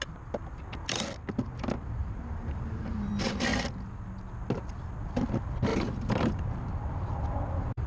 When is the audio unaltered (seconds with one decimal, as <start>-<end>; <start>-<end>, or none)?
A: 0.0-2.0; 3.1-5.7; 6.4-7.9